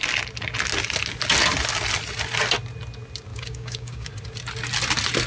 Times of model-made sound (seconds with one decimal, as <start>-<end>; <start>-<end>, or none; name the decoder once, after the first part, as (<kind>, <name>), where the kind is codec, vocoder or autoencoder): 3.3-4.1 (codec, DAC)